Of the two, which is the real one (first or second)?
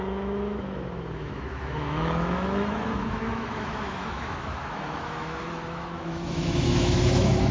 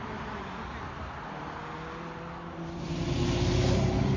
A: second